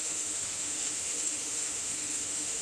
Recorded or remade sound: remade